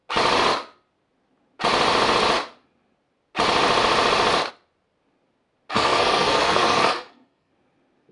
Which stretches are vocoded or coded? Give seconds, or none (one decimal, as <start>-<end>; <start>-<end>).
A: 5.7-7.5